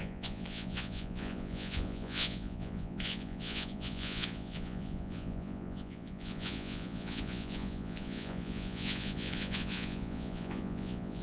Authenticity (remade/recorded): remade